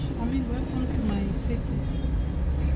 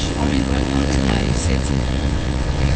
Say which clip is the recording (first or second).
first